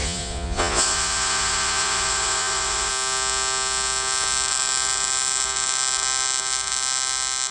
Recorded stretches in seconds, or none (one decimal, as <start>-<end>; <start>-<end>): 2.9-7.5